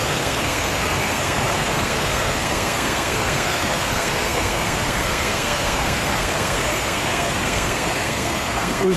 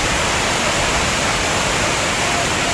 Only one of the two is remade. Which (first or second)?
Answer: first